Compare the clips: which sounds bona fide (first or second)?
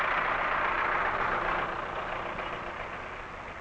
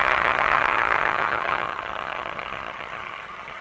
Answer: first